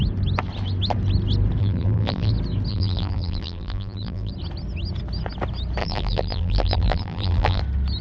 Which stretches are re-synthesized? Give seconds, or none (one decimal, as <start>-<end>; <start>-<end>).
1.6-2.3; 2.7-4.3; 5.8-7.6